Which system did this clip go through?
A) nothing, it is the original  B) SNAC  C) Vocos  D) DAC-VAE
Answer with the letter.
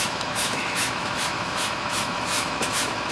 D